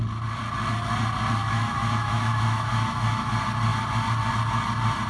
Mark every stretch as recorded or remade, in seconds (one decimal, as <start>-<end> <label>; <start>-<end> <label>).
0.0-1.4 recorded; 1.4-3.3 remade; 3.3-5.1 recorded